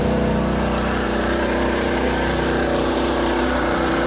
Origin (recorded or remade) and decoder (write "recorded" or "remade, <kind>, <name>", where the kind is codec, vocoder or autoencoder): remade, vocoder, BigVGAN v2